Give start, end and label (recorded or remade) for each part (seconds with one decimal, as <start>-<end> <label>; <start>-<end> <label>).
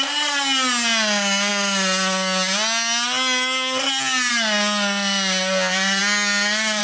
0.0-6.8 recorded